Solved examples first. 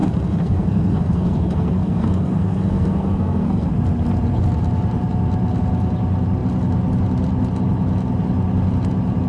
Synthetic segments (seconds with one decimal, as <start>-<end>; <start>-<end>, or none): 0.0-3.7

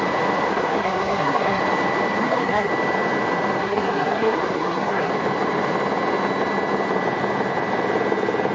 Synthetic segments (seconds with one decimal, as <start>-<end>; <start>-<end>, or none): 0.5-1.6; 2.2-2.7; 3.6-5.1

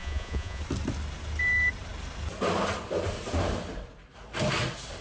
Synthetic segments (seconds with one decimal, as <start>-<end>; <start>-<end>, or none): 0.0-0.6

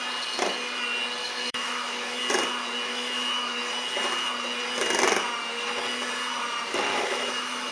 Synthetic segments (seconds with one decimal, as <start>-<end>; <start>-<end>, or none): 1.2-2.2; 2.9-3.7; 6.9-7.7

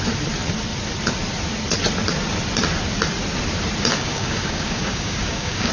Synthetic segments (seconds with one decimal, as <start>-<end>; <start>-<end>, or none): 3.9-5.7